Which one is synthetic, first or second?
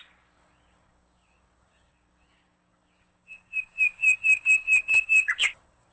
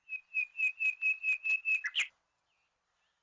first